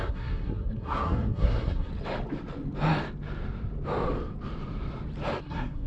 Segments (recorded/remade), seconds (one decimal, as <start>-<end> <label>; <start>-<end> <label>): 0.0-1.9 remade; 1.9-5.4 recorded; 5.4-5.9 remade